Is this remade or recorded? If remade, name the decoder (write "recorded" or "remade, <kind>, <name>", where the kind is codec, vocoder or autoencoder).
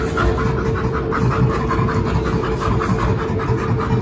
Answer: recorded